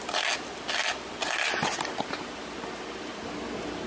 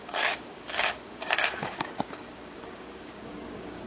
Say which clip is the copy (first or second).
second